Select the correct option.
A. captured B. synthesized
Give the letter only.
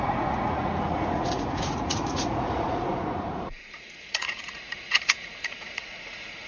B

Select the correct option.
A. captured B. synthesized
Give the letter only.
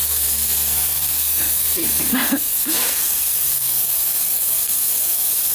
B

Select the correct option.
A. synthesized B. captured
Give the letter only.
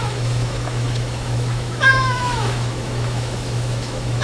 A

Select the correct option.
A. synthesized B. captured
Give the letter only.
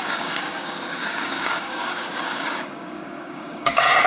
A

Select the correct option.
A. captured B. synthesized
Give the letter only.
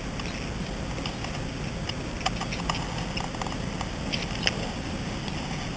A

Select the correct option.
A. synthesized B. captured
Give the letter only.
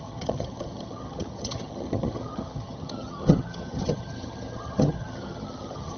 A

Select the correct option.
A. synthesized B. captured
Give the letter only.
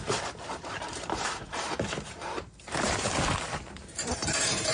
A